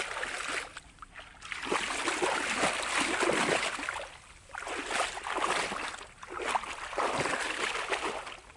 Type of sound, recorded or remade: recorded